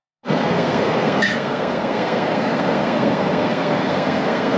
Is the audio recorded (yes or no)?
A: no